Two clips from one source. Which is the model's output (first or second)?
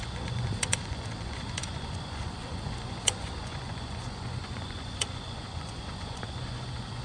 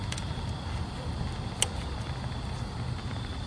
first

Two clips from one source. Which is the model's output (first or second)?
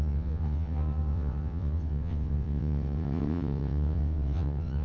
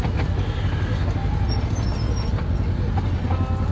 first